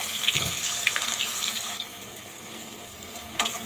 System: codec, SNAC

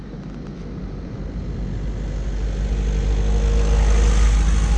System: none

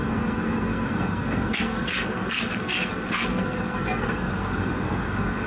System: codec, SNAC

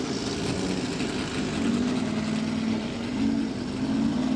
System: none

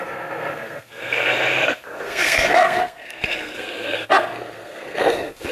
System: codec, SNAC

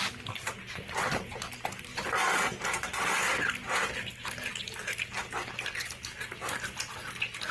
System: none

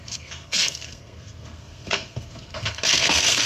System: codec, SNAC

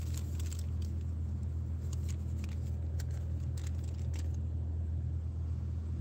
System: none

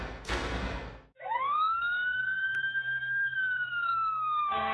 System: codec, SNAC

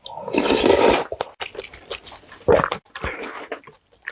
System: none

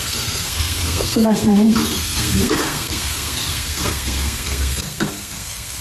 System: codec, SNAC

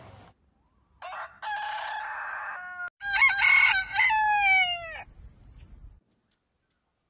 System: none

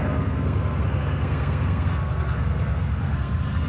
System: codec, SNAC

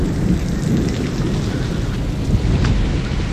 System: none